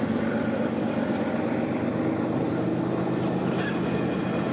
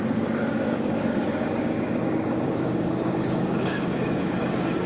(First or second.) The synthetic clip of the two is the second